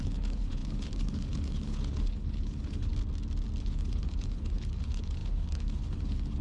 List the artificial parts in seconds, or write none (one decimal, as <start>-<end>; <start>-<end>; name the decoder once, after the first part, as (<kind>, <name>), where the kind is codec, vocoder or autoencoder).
0.0-2.9 (codec, HILCodec); 3.6-6.4